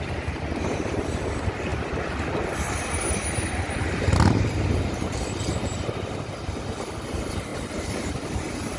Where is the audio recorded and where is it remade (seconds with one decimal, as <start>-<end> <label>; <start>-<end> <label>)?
0.0-7.5 recorded; 7.5-8.1 remade; 8.1-8.8 recorded